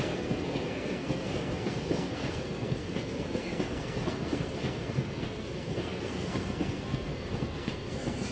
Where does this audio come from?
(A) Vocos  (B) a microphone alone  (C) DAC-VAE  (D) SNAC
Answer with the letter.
D